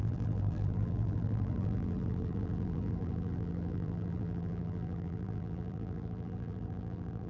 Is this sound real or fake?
fake